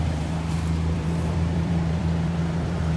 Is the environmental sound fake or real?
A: fake